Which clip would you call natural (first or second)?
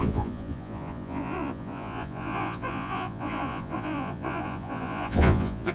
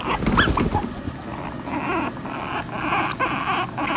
second